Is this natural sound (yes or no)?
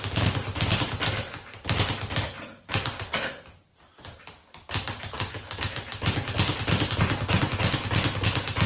yes